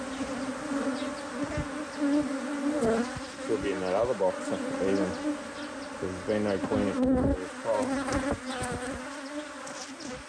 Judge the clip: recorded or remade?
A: recorded